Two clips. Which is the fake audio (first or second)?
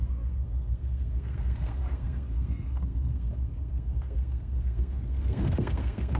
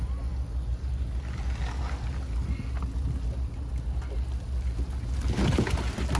first